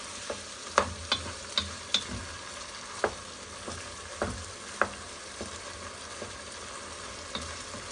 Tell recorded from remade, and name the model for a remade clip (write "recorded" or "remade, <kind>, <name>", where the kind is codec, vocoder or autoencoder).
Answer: recorded